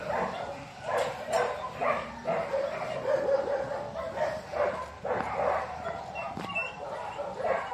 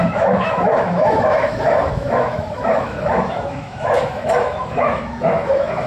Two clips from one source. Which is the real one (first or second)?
first